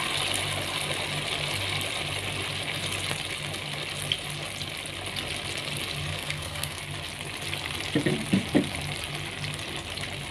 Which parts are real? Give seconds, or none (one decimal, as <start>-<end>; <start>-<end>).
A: 0.0-6.1; 6.8-10.3